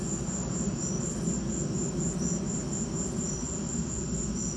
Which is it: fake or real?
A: real